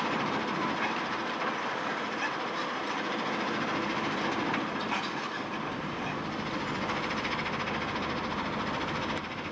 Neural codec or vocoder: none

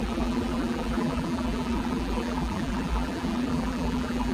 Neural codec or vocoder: vocoder, BigVGAN v2